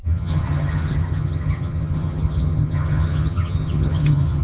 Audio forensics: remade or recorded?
remade